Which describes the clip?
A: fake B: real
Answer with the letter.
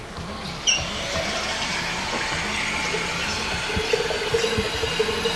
B